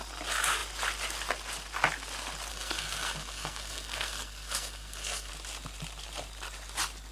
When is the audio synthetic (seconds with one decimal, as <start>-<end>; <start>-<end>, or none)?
2.5-5.3